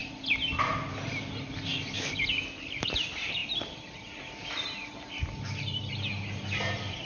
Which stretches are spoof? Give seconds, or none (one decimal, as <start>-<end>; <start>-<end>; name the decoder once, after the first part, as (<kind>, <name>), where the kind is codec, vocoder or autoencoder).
none